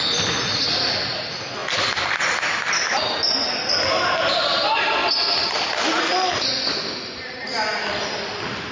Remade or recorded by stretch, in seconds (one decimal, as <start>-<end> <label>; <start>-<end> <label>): 0.0-8.7 recorded